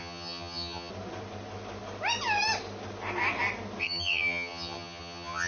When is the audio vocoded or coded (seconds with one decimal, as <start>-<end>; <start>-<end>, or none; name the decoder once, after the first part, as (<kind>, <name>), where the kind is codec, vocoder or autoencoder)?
0.0-0.9 (vocoder, HiFi-GAN); 3.8-5.5